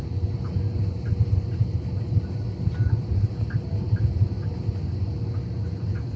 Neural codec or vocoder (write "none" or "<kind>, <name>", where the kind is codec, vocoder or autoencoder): none